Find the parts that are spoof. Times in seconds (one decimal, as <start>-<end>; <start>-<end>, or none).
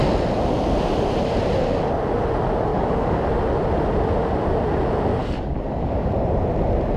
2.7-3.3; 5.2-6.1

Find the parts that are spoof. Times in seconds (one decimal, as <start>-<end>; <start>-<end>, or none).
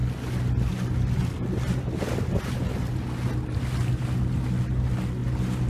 none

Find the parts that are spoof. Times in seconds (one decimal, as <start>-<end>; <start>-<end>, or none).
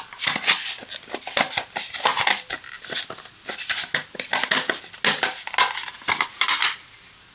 none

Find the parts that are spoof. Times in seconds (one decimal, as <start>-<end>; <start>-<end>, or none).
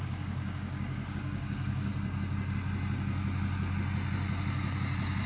0.0-1.9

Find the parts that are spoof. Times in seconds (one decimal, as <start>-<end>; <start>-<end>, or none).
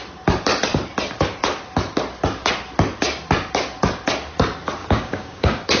4.8-5.8